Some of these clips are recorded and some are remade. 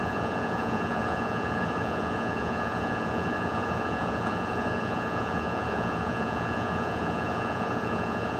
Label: remade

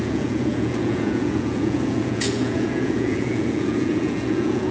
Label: remade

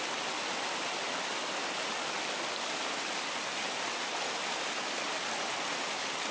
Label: recorded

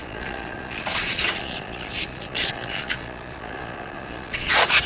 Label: remade